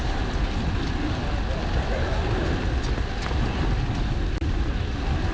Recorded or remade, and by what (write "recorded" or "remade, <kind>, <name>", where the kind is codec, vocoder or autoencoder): recorded